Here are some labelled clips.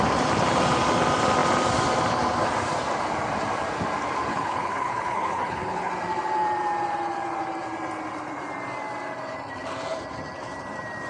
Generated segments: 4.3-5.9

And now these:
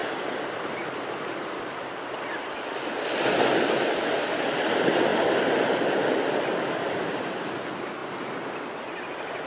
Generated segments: none